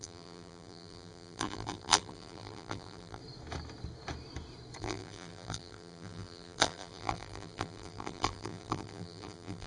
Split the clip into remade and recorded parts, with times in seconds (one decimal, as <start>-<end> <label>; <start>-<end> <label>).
0.0-3.2 remade; 3.2-4.8 recorded; 4.8-9.7 remade